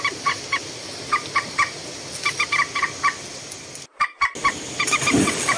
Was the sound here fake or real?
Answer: real